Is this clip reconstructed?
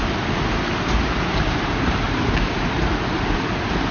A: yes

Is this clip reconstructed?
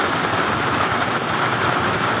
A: no